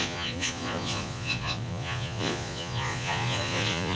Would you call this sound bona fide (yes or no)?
no